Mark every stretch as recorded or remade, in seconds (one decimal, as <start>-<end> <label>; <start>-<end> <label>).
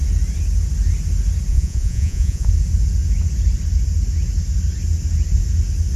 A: 0.0-1.5 recorded; 1.5-2.5 remade; 2.5-6.0 recorded